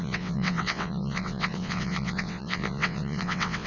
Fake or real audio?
fake